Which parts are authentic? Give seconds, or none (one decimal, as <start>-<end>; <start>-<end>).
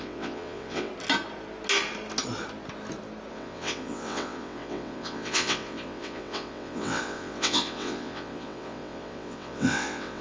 0.9-3.3